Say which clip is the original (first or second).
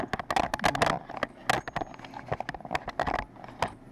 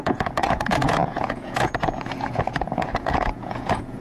first